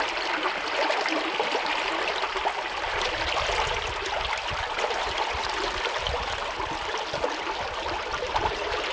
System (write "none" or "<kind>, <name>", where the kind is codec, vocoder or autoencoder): none